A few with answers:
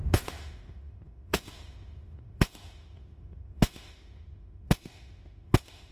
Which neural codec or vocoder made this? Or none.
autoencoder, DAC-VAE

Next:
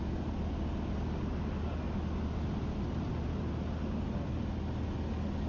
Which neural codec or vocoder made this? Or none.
none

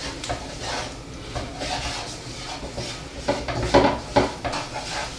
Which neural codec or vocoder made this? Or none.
none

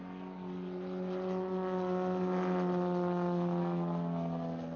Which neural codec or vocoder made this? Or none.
none